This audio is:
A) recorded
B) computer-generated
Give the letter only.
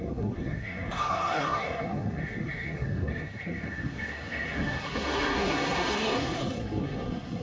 B